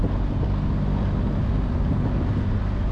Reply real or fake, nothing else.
real